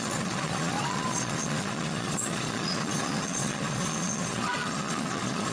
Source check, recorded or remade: remade